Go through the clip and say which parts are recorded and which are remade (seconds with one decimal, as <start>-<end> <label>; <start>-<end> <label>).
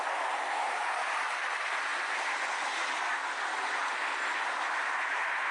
0.0-5.5 recorded